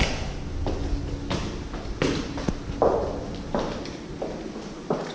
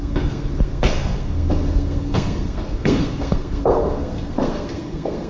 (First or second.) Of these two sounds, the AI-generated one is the second